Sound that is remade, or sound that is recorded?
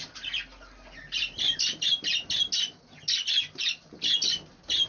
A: recorded